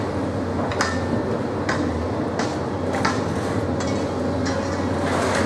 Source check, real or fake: real